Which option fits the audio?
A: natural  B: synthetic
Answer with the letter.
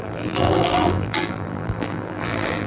B